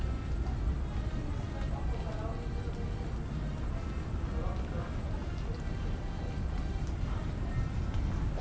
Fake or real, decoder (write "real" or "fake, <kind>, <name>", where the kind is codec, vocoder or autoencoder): real